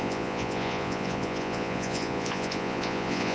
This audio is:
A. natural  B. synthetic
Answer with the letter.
B